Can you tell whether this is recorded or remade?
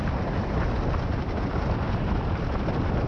recorded